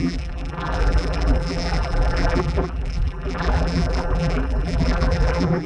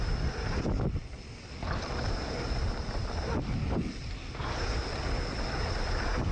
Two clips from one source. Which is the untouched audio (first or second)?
second